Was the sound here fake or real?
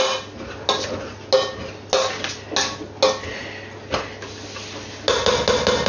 real